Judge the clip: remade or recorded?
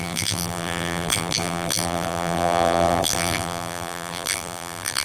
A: remade